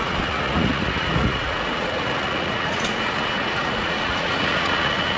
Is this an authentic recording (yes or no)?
no